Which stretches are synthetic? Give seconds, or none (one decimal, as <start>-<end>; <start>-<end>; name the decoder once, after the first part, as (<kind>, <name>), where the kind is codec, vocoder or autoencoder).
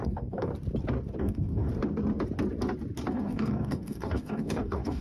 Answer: 0.0-0.5 (codec, DAC); 1.2-1.7; 3.1-5.0